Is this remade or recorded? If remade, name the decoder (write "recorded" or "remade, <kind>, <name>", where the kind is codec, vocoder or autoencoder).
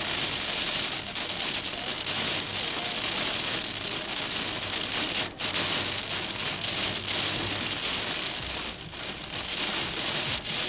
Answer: recorded